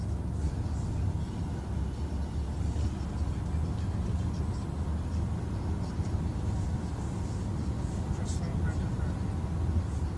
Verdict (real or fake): real